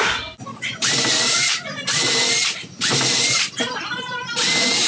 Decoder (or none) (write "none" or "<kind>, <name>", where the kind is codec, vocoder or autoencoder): none